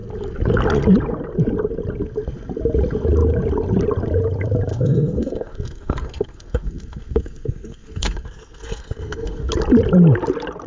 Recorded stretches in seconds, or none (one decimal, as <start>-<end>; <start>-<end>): 0.0-4.7; 9.5-10.7